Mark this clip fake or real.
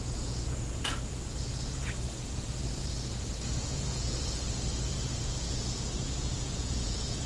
fake